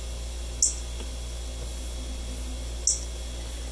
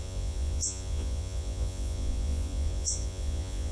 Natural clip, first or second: first